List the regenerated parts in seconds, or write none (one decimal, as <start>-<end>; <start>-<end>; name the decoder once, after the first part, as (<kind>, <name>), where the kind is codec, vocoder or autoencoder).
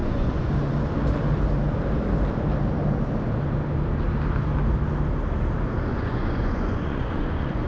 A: 0.0-0.5 (vocoder, Vocos); 5.9-7.7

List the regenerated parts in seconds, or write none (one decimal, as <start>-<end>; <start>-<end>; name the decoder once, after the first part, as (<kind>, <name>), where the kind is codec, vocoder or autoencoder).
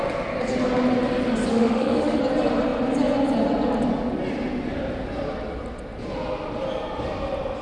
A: 1.5-2.2 (autoencoder, DAC-VAE)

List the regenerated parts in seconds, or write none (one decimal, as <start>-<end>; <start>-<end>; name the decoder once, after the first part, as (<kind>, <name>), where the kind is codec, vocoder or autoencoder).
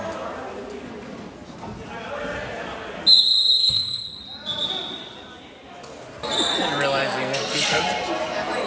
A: 3.6-4.2 (codec, SNAC); 7.0-7.8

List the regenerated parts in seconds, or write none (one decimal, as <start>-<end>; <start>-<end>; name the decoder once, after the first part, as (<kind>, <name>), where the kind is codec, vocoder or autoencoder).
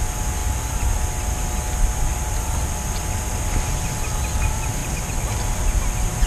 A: 0.4-1.5 (vocoder, BigVGAN v2); 2.1-4.3; 4.8-5.3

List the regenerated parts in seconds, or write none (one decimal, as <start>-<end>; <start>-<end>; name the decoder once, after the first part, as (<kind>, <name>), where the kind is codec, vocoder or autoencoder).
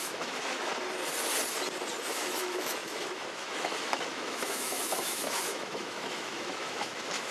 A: 0.0-0.7 (autoencoder, DAC-VAE); 2.1-7.3